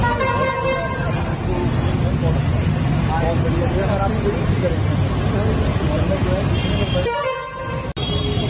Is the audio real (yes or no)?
yes